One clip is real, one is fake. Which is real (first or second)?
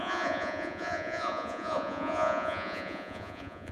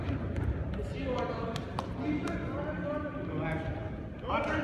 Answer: second